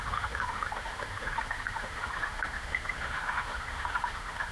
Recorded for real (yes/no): no